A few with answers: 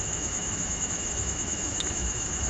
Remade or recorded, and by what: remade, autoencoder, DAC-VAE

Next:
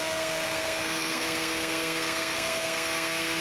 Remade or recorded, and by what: remade, codec, SNAC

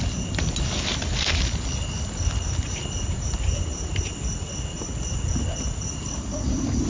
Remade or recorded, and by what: recorded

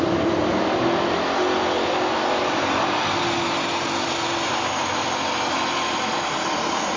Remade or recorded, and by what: recorded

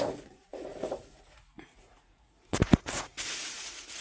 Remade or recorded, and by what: remade, vocoder, Vocos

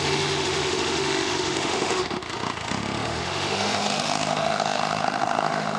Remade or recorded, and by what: remade, autoencoder, DAC-VAE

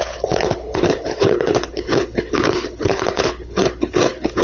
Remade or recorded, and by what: remade, codec, HILCodec